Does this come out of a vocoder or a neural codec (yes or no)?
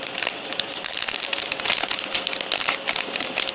no